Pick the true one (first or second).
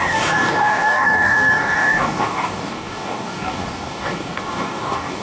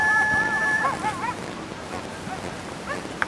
second